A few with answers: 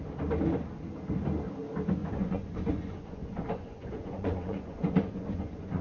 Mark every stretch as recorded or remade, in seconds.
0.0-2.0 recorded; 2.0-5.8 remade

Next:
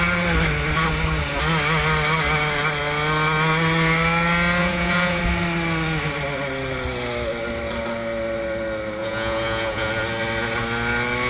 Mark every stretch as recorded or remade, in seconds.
0.0-4.6 recorded; 4.6-5.2 remade; 5.2-9.0 recorded; 9.0-9.9 remade; 9.9-11.3 recorded

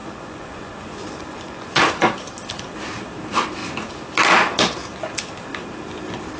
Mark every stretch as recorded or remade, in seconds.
0.0-2.1 remade; 2.1-6.4 recorded

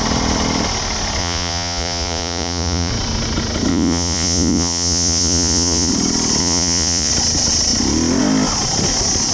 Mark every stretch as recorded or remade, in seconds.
0.0-1.2 recorded; 1.2-2.9 remade; 2.9-3.7 recorded; 3.7-5.9 remade; 5.9-6.4 recorded; 6.4-7.1 remade; 7.1-9.3 recorded